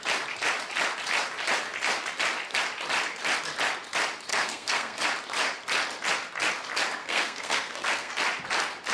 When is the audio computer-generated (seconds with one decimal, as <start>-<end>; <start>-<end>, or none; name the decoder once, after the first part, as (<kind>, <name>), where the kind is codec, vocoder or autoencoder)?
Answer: 4.3-5.0 (codec, SNAC); 7.0-8.1